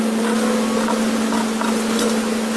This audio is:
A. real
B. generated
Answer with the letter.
A